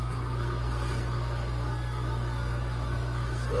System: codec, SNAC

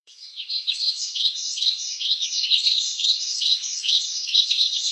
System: codec, SNAC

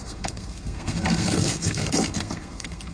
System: codec, SNAC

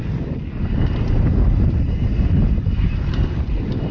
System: none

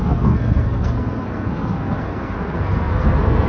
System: codec, SNAC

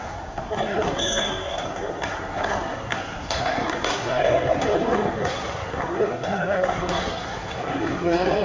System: codec, SNAC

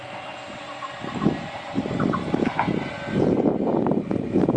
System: none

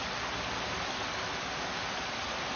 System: none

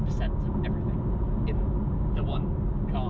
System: none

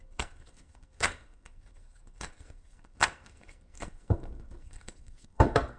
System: codec, SNAC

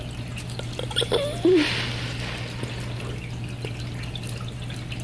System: none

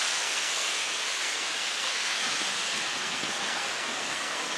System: codec, SNAC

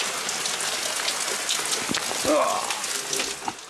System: none